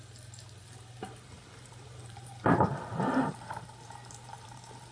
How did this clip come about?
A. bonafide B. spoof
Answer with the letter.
B